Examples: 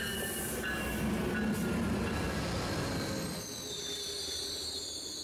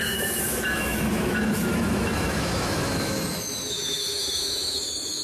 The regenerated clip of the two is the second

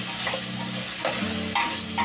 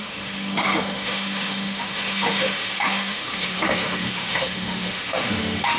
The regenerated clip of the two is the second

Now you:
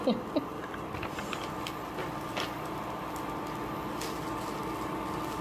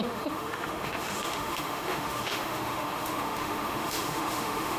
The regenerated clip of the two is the second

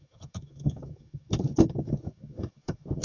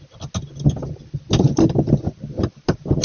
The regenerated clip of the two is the first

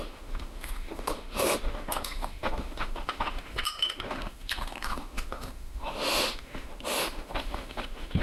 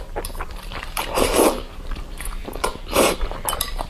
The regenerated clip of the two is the first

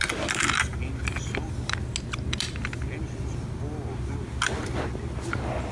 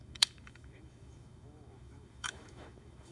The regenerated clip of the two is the second